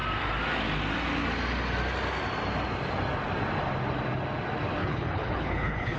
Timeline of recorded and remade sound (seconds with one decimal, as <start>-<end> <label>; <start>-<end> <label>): 0.0-4.8 recorded; 4.8-6.0 remade